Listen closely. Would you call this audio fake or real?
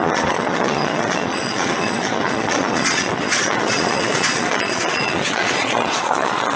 fake